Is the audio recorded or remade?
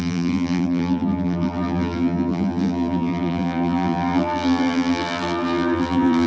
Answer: remade